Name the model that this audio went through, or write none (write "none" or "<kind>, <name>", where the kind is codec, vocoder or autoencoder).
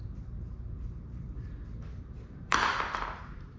vocoder, BigVGAN v2